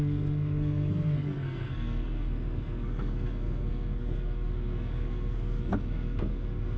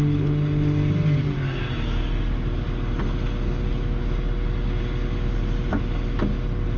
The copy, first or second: first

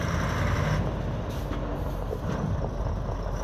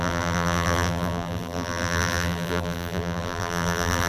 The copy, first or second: second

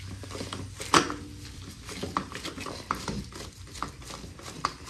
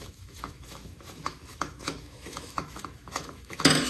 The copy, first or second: second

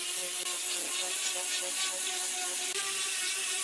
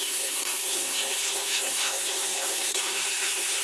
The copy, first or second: second